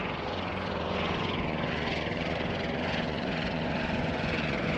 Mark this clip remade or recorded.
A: remade